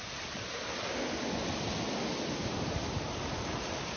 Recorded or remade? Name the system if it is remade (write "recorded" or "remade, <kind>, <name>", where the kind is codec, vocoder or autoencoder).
recorded